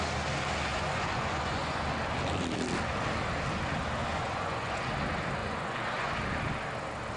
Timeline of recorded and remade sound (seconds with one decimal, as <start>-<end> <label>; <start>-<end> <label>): 0.0-0.7 recorded; 0.7-1.8 remade; 1.8-4.0 recorded; 4.0-4.9 remade; 4.9-5.4 recorded; 5.4-6.2 remade; 6.2-7.2 recorded